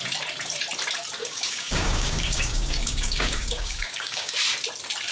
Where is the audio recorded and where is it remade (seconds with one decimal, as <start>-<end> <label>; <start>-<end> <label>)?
0.0-1.2 recorded; 1.2-4.3 remade; 4.3-5.1 recorded